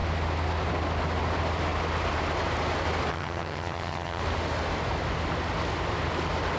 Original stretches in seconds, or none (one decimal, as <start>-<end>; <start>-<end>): 0.0-3.1; 4.2-6.6